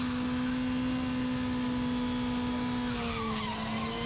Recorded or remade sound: recorded